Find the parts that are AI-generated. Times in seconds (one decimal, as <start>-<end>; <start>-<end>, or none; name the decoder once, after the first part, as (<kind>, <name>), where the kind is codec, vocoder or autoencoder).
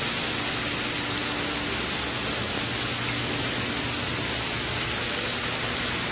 none